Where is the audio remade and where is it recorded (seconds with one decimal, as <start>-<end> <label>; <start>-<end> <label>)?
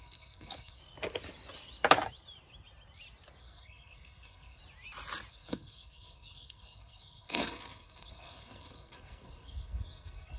0.0-0.8 remade; 0.8-3.4 recorded; 3.4-4.6 remade; 4.6-5.3 recorded; 5.3-10.4 remade